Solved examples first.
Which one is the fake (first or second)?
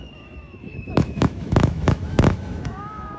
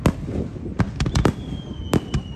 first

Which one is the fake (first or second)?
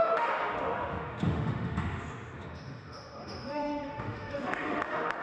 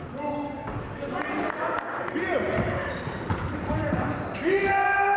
first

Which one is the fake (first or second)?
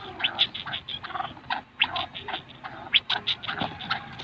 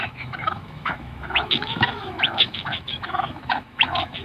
second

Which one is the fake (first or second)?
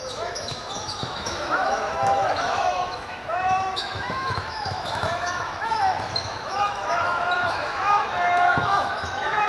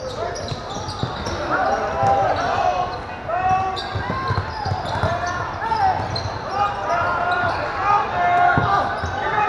first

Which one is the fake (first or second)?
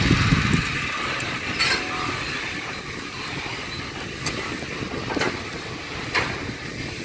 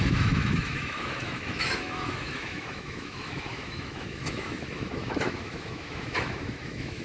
second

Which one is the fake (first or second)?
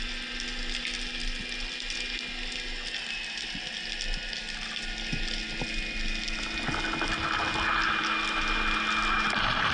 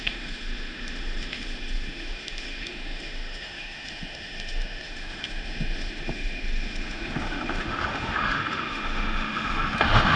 second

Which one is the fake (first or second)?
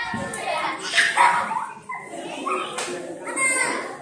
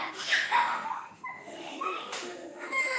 second